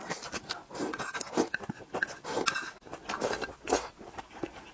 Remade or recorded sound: recorded